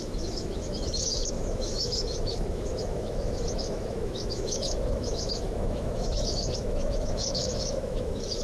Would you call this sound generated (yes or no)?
yes